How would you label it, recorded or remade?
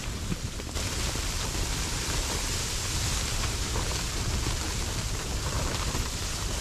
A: remade